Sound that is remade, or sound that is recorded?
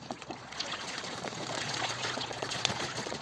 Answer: remade